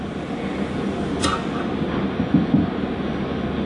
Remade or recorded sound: recorded